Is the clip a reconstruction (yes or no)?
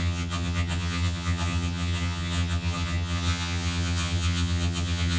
yes